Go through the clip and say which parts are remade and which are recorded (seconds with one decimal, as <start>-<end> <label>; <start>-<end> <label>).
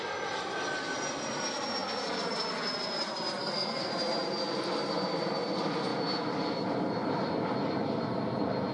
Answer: 0.0-3.4 recorded; 3.4-3.9 remade; 3.9-8.7 recorded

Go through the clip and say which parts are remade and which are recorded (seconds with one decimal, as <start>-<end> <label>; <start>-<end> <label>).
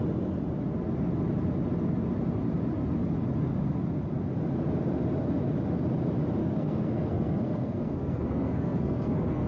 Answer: 0.0-6.4 recorded; 6.4-9.5 remade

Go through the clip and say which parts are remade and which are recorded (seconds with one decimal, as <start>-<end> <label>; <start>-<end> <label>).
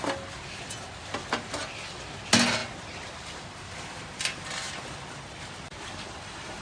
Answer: 0.0-6.6 recorded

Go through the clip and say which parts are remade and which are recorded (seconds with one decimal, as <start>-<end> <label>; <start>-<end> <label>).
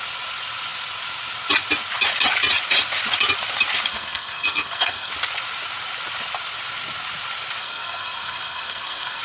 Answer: 0.0-3.9 recorded; 3.9-5.1 remade; 5.1-7.6 recorded; 7.6-9.2 remade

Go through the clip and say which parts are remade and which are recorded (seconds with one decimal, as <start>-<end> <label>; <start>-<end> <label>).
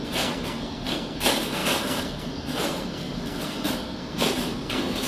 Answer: 0.0-5.1 remade